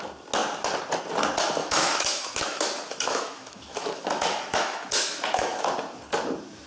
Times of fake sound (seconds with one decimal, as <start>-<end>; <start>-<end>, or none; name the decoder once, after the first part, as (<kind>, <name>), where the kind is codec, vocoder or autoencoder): 1.6-5.6 (autoencoder, DAC-VAE)